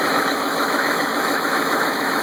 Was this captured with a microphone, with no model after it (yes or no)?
no